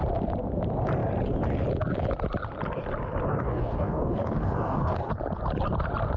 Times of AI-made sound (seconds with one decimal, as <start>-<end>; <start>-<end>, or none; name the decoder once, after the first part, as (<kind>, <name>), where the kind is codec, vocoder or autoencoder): 3.3-5.1 (codec, DAC)

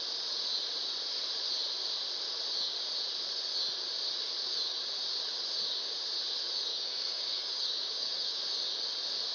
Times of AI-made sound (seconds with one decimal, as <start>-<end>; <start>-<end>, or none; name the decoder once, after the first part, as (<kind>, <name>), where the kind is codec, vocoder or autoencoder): 6.7-8.3 (codec, DAC)

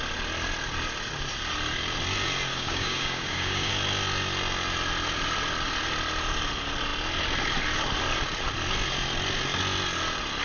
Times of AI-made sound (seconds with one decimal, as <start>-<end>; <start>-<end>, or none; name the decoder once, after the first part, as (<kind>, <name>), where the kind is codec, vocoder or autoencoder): 2.5-3.7 (codec, DAC)

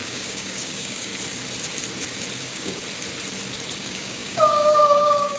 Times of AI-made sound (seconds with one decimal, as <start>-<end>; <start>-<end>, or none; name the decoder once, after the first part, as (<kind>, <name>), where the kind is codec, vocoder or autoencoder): 0.0-1.1 (codec, DAC); 2.4-2.8; 3.8-5.4

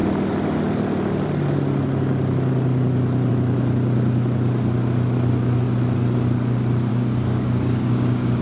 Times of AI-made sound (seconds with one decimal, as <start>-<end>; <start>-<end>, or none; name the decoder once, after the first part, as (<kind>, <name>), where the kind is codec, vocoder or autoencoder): 6.9-8.4 (codec, DAC)

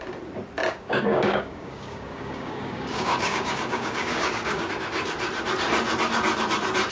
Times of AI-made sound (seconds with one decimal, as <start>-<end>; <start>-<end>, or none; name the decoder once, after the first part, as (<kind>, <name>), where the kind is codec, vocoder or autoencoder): 0.6-4.7 (codec, DAC)

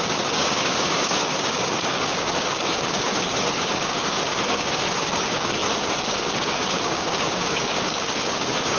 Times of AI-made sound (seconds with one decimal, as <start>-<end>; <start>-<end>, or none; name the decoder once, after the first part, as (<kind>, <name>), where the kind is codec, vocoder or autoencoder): 0.0-8.8 (codec, DAC)

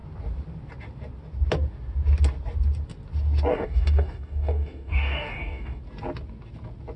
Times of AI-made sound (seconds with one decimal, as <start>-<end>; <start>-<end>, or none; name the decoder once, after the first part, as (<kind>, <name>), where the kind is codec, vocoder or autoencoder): 3.5-5.8 (codec, DAC)